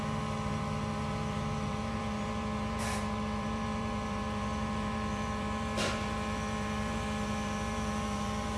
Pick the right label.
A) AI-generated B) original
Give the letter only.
A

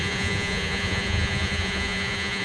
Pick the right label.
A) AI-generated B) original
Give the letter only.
A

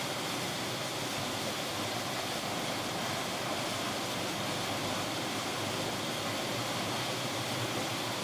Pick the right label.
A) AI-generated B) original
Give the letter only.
B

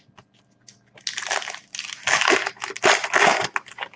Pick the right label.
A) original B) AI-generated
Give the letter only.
A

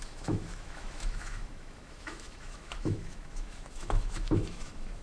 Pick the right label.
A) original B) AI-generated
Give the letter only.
B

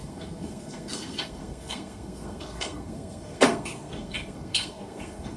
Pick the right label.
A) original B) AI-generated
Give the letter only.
B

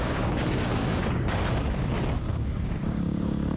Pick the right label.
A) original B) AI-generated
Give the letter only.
B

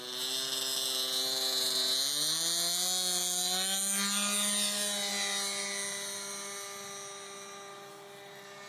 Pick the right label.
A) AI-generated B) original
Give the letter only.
B